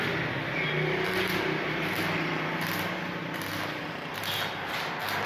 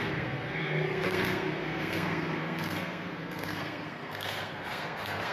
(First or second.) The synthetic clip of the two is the second